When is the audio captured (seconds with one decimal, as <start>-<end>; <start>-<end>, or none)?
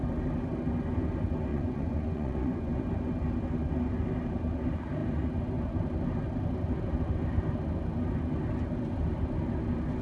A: 0.0-1.5; 2.8-10.0